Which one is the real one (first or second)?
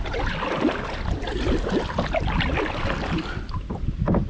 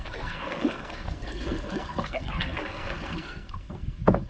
first